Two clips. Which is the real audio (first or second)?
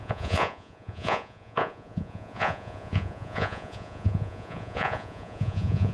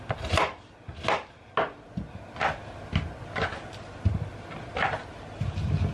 second